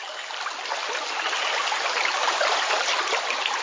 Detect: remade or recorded recorded